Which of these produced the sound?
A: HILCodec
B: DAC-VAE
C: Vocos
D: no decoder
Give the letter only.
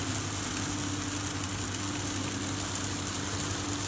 D